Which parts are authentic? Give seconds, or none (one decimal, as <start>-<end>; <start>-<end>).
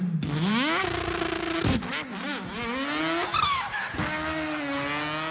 0.0-5.3